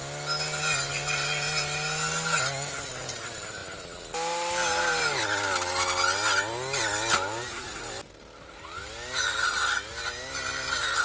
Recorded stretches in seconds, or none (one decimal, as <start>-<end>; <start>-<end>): 0.0-11.0